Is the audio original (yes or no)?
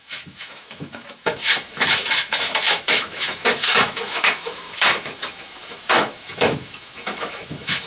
no